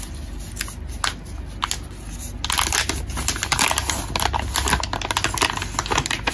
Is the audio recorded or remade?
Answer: recorded